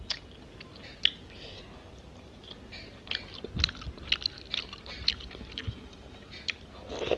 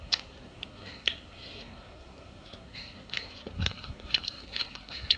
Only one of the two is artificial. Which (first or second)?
second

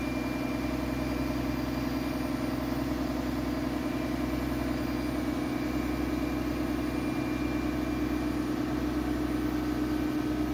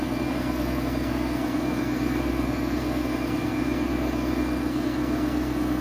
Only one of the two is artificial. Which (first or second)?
second